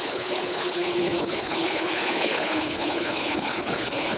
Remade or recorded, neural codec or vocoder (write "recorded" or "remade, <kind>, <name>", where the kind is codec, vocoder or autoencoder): remade, codec, HILCodec